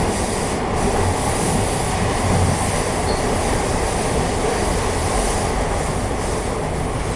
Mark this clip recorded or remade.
recorded